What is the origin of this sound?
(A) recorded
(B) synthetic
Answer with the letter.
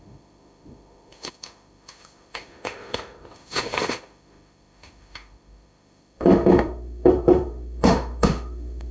B